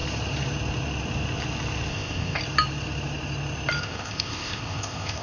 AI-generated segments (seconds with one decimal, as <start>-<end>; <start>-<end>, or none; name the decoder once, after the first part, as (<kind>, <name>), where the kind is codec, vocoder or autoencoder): 1.9-2.4 (codec, ZipCodec); 3.8-5.2